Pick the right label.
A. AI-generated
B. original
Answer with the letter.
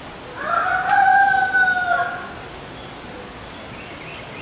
B